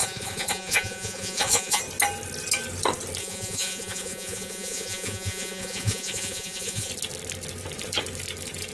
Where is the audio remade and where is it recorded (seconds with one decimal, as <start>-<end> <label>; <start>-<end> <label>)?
0.0-1.8 remade; 1.8-3.2 recorded; 3.2-6.9 remade; 6.9-8.7 recorded

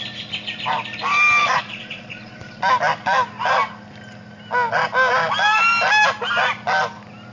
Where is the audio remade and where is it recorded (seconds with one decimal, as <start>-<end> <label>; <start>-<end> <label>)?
0.0-1.4 recorded; 1.4-2.6 remade; 2.6-7.3 recorded

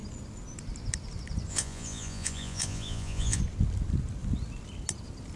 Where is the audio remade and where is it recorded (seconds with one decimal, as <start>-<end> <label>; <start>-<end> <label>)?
0.0-1.5 recorded; 1.5-3.4 remade; 3.4-5.4 recorded

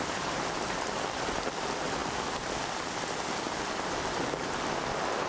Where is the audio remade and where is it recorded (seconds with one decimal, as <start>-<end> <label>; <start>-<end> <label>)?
0.0-5.3 recorded

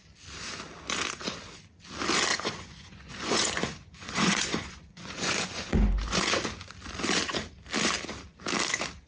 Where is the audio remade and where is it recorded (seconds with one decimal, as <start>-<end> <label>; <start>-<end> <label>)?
0.0-2.3 recorded; 2.3-6.7 remade; 6.7-9.1 recorded